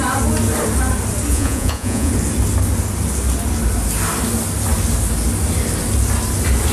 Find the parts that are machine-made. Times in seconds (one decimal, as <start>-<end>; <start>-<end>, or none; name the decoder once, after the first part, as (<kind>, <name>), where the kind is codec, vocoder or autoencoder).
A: 1.3-2.1 (vocoder, Vocos)